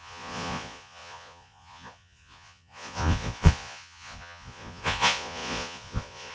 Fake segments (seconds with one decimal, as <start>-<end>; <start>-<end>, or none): 0.0-6.3